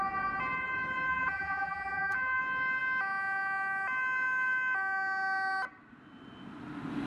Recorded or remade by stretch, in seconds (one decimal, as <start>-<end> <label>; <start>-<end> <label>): 0.0-1.1 recorded; 1.1-2.4 remade; 2.4-7.1 recorded